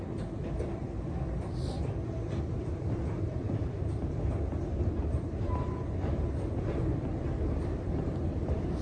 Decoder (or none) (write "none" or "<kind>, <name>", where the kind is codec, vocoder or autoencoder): vocoder, BigVGAN v2